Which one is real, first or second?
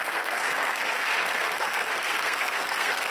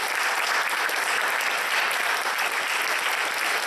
second